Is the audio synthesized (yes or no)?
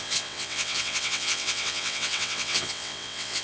yes